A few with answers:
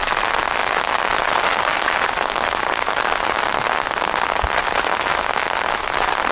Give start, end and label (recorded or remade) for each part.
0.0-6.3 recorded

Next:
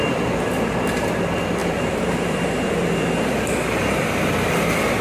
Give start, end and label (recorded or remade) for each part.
0.0-5.0 remade

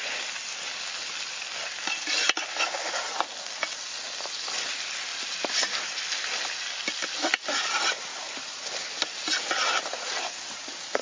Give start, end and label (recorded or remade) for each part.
0.0-5.1 recorded; 5.1-6.0 remade; 6.0-8.1 recorded; 8.1-8.7 remade; 8.7-11.0 recorded